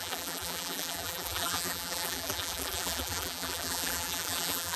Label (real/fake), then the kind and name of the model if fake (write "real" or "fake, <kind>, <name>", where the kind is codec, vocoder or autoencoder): fake, vocoder, BigVGAN v2